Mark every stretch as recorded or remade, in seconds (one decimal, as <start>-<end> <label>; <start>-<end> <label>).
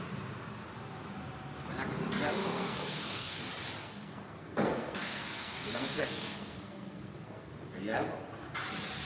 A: 0.0-2.4 recorded; 2.4-3.4 remade; 3.4-3.8 recorded; 3.8-7.5 remade; 7.5-9.1 recorded